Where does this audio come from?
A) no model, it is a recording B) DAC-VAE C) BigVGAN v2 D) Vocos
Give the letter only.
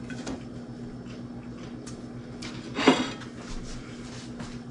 A